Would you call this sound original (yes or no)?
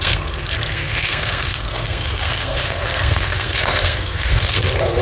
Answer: no